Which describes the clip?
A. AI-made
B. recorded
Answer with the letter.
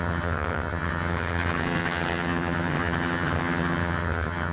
A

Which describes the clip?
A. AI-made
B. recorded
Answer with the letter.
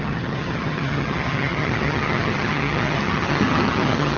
A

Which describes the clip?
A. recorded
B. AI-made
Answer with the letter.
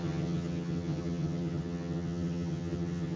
B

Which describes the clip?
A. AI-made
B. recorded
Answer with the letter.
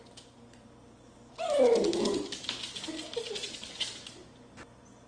B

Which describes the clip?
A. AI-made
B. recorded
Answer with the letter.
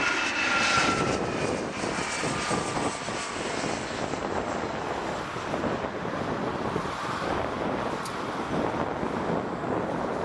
B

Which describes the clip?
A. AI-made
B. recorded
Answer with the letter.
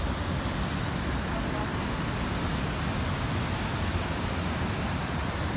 B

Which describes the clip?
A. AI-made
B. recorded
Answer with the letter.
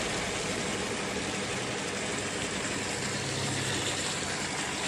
A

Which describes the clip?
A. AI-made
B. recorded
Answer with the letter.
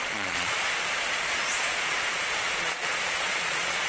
A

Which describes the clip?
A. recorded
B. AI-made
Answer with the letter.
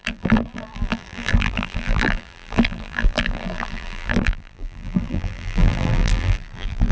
B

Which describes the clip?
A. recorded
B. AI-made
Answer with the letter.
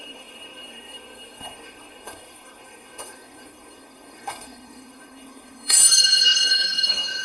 B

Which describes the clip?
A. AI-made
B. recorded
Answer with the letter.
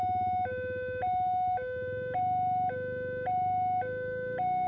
B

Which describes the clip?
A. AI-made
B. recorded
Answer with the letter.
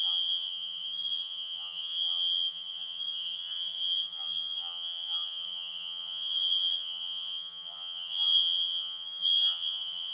A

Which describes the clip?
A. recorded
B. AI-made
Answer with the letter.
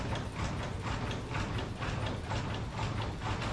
A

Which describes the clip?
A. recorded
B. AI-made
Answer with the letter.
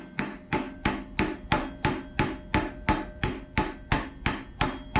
A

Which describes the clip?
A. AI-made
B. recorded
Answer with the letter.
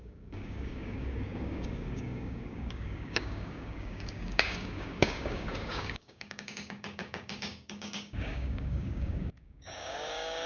A